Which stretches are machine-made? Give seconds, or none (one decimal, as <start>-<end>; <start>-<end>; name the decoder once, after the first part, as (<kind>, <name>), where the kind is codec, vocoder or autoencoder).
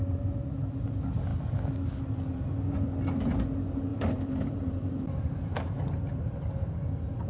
3.9-6.5 (vocoder, BigVGAN v2)